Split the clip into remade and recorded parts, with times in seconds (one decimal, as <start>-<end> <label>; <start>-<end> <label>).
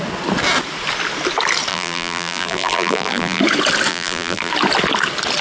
0.0-1.7 recorded; 1.7-3.4 remade; 3.4-3.9 recorded; 3.9-4.5 remade; 4.5-5.4 recorded